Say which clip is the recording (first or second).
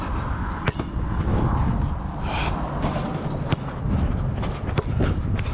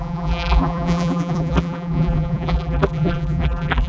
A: first